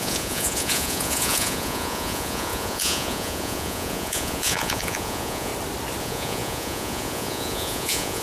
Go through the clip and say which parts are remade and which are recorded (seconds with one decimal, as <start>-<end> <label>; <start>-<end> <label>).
0.0-5.5 remade; 5.5-6.0 recorded; 6.0-8.2 remade